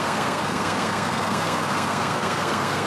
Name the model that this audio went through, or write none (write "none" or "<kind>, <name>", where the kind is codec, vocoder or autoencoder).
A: codec, SNAC